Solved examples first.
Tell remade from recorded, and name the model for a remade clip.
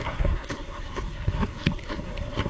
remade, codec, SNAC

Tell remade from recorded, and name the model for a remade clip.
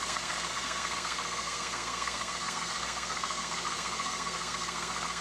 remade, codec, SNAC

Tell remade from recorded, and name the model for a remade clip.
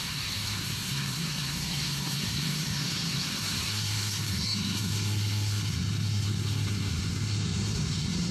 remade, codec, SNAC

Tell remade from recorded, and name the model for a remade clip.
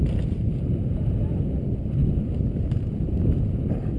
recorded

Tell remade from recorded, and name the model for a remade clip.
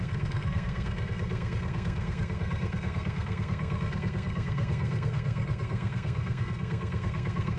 remade, codec, SNAC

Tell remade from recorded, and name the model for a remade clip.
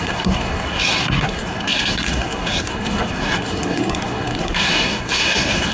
remade, codec, SNAC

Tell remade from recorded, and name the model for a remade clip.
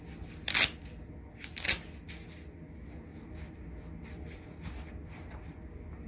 recorded